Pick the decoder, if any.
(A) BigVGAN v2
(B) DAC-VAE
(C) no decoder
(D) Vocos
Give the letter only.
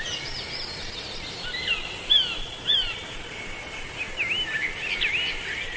C